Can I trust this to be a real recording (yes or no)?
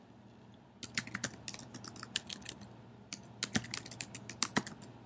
yes